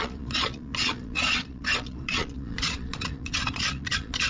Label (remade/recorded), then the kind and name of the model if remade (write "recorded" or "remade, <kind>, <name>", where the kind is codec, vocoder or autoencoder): remade, vocoder, Vocos